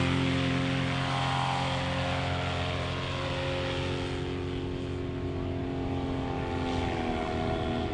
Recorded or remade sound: recorded